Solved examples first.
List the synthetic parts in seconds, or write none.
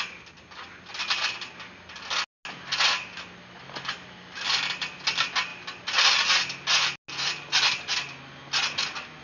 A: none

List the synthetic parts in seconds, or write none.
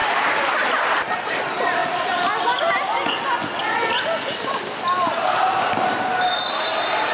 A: none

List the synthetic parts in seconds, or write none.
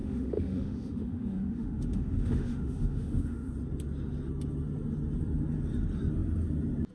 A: 0.0-3.5 (autoencoder, DAC-VAE)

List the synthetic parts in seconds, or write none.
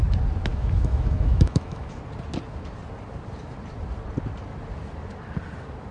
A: 0.5-2.0 (autoencoder, DAC-VAE)